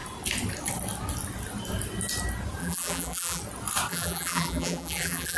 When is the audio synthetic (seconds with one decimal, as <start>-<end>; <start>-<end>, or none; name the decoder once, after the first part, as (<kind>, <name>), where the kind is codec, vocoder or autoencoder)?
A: 2.6-3.4 (vocoder, BigVGAN v2); 3.9-5.4